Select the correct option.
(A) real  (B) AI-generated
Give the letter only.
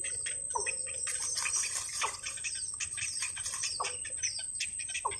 A